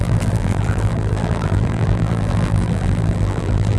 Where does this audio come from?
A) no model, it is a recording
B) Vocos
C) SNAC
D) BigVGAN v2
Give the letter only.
D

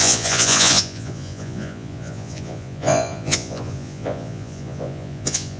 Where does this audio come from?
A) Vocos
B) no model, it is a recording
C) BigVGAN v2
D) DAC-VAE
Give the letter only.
A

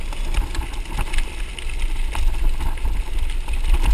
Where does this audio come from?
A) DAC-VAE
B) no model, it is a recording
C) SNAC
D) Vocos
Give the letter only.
B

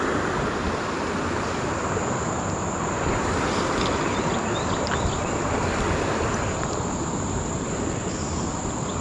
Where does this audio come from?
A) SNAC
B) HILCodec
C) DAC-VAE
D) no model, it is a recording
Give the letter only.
D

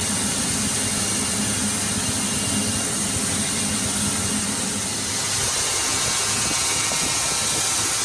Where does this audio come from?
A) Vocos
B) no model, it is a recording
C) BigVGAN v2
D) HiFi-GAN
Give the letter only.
B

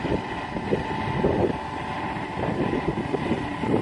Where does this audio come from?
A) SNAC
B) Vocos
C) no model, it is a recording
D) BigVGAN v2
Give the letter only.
D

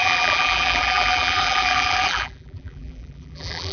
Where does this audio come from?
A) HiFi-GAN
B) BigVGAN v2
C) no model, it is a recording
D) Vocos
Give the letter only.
B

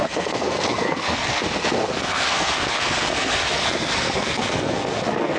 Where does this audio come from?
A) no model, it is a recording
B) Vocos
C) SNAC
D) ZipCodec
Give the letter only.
C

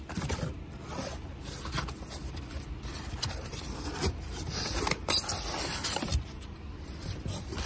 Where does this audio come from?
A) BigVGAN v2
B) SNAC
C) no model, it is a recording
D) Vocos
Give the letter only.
A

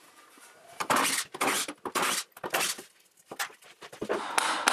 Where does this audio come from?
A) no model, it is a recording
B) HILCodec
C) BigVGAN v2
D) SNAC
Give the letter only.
A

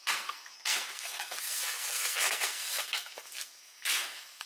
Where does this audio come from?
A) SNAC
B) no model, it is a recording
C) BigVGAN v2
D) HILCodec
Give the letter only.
A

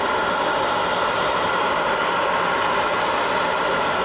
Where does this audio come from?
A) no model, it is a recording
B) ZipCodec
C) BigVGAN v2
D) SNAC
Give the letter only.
A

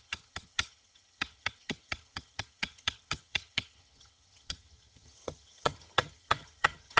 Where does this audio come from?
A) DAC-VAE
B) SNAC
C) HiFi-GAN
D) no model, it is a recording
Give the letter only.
C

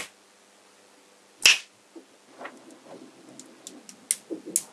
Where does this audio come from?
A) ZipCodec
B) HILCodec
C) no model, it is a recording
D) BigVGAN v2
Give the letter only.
C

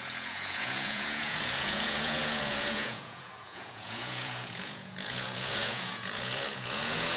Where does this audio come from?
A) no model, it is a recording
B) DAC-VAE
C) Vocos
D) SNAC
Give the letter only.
C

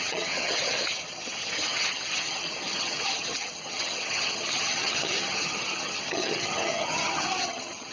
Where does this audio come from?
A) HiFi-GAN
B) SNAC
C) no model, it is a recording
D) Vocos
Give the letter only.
A